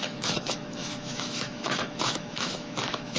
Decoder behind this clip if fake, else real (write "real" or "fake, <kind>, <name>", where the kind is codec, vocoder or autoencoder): fake, autoencoder, DAC-VAE